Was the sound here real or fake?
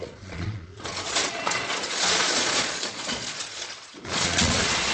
fake